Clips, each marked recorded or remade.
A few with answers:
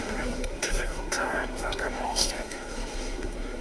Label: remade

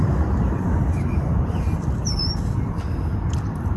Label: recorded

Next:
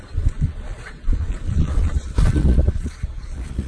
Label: remade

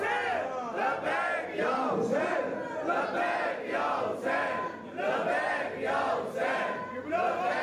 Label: recorded